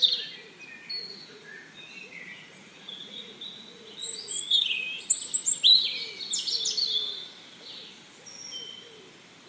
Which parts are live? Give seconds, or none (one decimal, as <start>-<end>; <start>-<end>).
0.0-1.1; 4.4-9.5